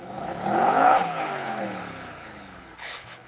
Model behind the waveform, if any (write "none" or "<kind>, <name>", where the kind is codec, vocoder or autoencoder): codec, HILCodec